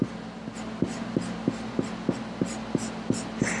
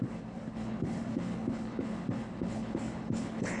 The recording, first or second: first